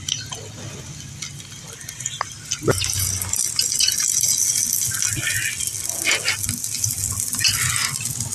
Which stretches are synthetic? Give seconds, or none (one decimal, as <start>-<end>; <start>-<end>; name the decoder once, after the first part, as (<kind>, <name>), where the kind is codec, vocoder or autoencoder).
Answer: none